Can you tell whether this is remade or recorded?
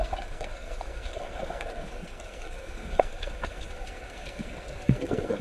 remade